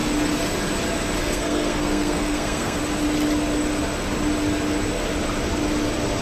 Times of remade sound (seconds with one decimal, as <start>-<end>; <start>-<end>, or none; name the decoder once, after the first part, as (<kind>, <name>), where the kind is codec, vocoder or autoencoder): 1.2-2.8 (codec, SNAC)